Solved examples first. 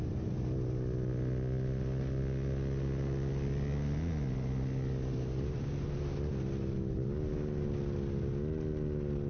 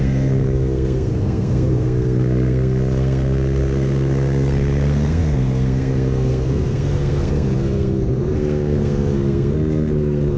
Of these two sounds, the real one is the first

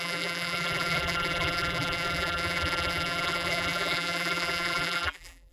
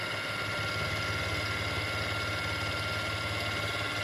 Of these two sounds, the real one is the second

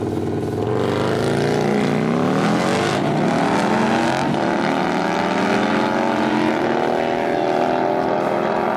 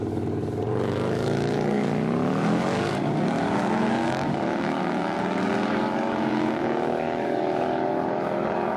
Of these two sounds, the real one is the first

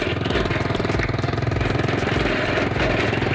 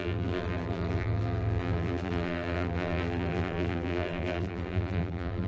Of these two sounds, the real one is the first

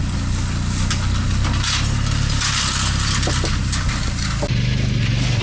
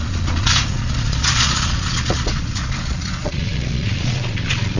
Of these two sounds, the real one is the first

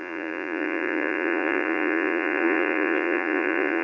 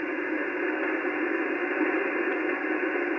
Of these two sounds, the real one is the second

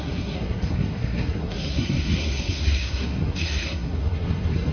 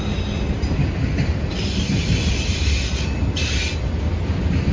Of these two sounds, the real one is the second